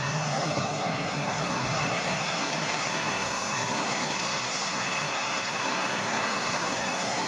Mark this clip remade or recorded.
remade